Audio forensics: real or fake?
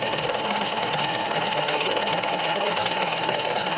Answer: fake